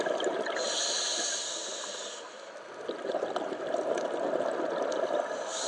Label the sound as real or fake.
real